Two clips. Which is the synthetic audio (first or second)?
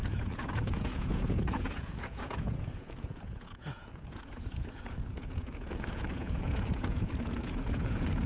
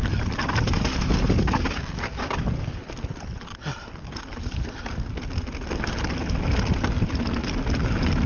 first